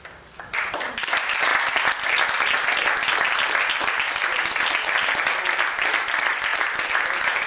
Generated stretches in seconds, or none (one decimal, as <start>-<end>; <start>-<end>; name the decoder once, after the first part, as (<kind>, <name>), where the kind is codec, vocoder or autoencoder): none